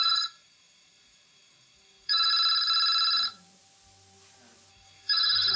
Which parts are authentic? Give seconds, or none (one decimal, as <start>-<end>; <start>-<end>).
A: 2.3-4.7

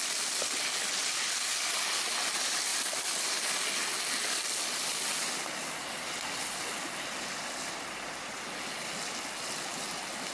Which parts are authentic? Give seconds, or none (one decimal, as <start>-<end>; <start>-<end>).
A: 0.0-10.3

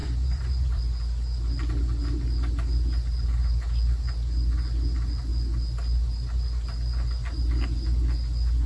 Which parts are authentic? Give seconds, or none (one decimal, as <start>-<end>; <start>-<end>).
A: 0.8-8.7

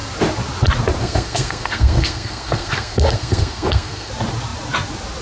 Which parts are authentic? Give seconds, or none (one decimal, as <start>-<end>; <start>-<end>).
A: 0.0-1.0; 4.1-5.2

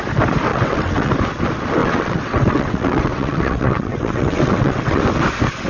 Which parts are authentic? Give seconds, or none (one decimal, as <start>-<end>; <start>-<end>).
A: 0.0-0.5; 1.1-1.8; 5.0-5.7

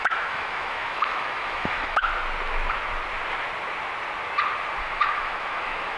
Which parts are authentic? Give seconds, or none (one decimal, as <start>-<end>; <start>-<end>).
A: 2.1-4.8

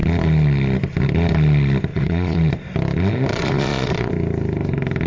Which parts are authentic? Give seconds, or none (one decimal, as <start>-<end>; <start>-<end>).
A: 0.0-1.9; 2.5-3.3; 4.1-5.1

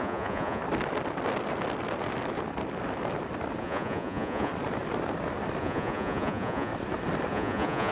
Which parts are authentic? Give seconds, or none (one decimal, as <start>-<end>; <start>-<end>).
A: 0.6-3.6; 4.5-5.6; 6.7-7.3